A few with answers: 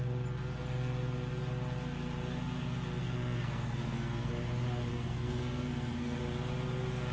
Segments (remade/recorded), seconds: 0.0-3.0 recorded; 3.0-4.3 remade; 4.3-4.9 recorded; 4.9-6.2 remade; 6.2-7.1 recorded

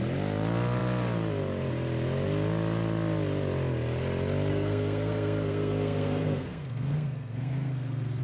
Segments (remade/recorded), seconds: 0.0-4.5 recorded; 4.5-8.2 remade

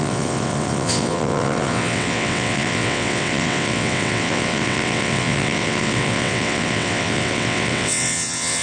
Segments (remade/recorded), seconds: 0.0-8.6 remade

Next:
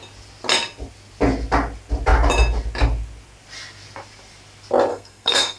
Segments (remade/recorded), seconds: 0.0-4.9 recorded; 4.9-5.6 remade

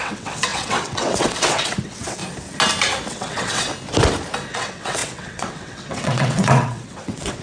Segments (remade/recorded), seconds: 0.0-2.2 remade; 2.2-3.1 recorded; 3.1-3.7 remade; 3.7-4.5 recorded; 4.5-7.4 remade

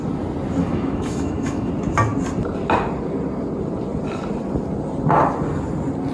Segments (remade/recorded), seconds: 0.0-0.6 recorded; 0.6-1.7 remade; 1.7-6.1 recorded

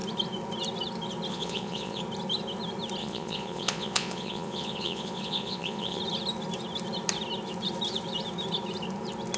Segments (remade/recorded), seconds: 0.0-1.3 recorded; 1.3-2.0 remade; 2.0-3.0 recorded; 3.0-6.0 remade; 6.0-9.4 recorded

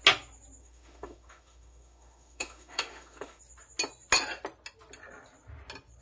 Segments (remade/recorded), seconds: 0.0-0.6 recorded; 0.6-3.4 remade; 3.4-6.0 recorded